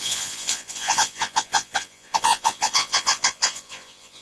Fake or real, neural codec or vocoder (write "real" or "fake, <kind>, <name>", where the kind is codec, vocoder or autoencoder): fake, vocoder, Vocos